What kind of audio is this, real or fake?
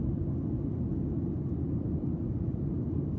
real